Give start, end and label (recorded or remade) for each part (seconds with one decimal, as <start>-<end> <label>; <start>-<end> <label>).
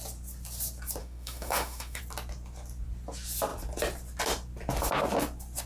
0.0-1.0 recorded; 1.0-2.0 remade; 2.0-5.7 recorded